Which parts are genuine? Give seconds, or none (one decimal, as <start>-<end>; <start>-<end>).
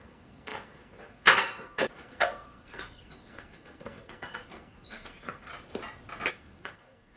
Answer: 5.5-6.3